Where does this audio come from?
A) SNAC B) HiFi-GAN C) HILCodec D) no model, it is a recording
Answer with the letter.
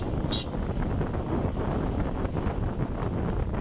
D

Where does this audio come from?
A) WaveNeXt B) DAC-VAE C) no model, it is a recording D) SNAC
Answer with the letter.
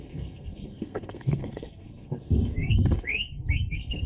D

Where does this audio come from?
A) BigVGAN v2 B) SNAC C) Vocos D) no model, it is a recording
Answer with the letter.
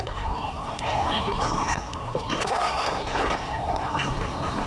B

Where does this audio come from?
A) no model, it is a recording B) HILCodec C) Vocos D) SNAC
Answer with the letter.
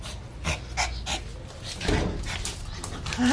A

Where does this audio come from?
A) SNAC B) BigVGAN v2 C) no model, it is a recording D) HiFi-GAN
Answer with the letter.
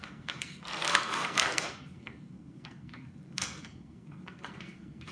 A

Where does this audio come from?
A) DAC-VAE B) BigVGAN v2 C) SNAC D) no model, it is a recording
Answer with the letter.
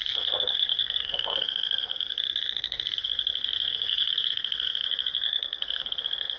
C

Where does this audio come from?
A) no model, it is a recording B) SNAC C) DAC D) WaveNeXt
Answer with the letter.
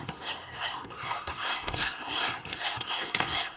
B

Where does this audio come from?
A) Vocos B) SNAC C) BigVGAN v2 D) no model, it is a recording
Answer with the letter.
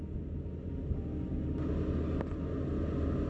D